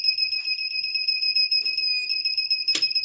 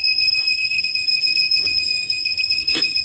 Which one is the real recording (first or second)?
first